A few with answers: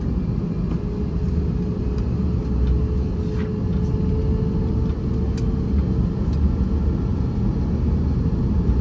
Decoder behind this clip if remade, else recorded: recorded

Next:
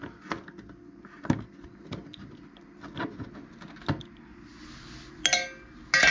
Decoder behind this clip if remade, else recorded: recorded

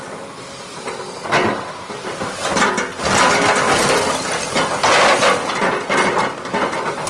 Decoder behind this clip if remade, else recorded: recorded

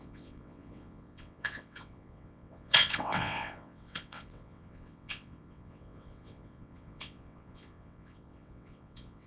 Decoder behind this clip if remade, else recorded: remade, vocoder, WaveNeXt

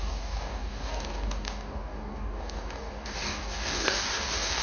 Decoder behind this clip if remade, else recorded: remade, codec, DAC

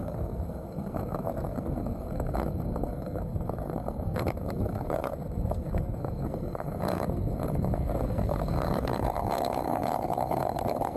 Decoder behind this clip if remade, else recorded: remade, codec, SNAC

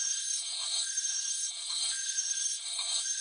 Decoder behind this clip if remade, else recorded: remade, codec, SNAC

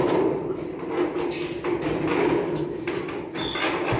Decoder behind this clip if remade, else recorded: recorded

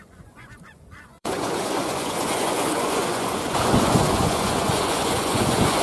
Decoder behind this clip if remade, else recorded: remade, vocoder, Vocos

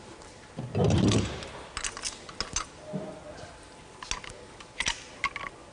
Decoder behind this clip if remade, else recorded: recorded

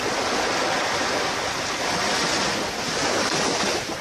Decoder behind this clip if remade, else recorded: recorded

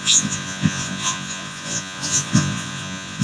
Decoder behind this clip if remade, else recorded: remade, vocoder, Vocos